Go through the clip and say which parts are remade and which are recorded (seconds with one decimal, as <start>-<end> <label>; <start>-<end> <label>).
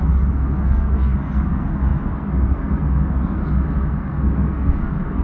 0.0-5.2 remade